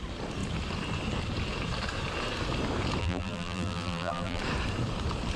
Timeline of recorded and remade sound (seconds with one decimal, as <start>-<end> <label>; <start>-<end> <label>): 0.0-3.0 recorded; 3.0-4.4 remade; 4.4-5.4 recorded